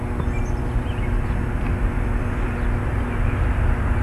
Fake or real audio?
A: real